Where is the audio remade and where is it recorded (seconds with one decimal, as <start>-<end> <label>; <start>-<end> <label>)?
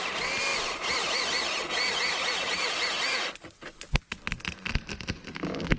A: 0.0-5.8 recorded